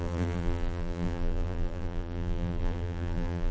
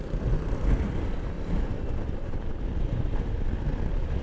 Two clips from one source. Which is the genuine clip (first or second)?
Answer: second